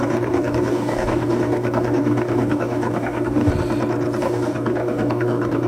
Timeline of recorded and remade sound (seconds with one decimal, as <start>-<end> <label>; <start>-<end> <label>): 0.0-3.5 remade; 3.5-4.2 recorded; 4.2-5.7 remade